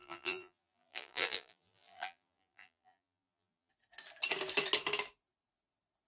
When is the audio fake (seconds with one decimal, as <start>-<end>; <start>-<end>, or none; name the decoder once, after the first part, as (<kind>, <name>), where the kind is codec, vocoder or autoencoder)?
0.0-3.7 (vocoder, BigVGAN v2)